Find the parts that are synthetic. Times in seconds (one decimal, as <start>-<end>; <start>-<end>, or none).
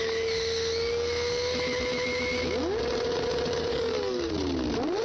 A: 3.7-4.3